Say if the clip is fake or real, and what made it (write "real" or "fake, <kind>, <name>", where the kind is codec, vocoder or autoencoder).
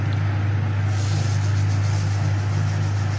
real